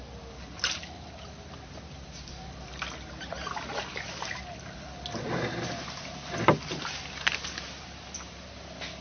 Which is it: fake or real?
real